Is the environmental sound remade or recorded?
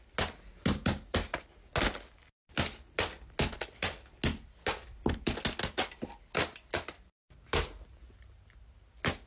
recorded